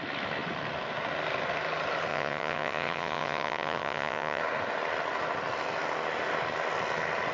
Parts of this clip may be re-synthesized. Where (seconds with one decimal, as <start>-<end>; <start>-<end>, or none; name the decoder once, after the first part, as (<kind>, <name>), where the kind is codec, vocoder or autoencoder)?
2.1-4.4 (vocoder, HiFi-GAN)